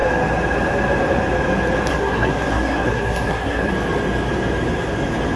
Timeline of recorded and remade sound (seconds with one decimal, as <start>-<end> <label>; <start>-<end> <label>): 0.0-1.9 recorded; 1.9-3.7 remade; 3.7-5.4 recorded